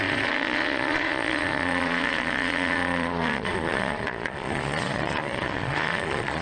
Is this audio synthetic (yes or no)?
yes